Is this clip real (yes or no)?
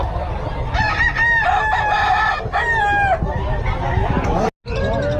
yes